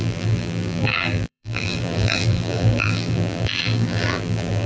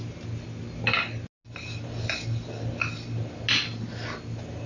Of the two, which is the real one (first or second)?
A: second